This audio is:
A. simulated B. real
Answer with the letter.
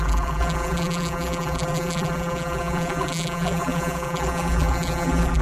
A